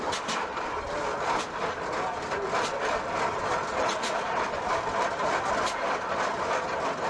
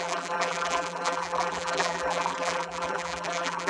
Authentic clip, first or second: first